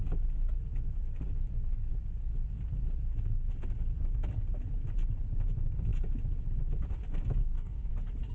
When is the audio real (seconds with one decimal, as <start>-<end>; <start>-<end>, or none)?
0.0-7.4; 7.9-8.3